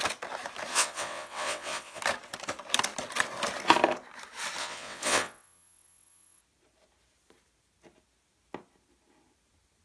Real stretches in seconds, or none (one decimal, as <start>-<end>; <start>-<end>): 0.0-0.7; 2.0-4.6; 6.4-9.8